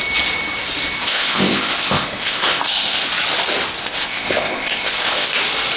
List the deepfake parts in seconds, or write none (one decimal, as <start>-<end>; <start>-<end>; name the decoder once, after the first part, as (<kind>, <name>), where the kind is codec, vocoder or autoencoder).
1.0-3.1 (codec, ZipCodec); 3.8-5.3